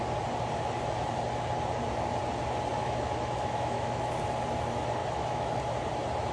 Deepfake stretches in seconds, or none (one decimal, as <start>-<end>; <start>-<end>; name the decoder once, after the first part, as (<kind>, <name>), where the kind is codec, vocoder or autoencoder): 2.8-4.1 (autoencoder, DAC-VAE); 5.0-5.6